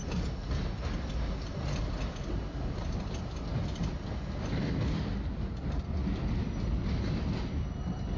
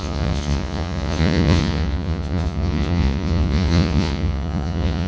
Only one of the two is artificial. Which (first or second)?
second